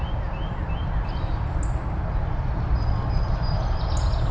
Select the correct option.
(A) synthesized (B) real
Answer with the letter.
B